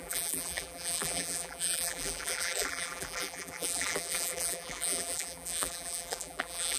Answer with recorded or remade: remade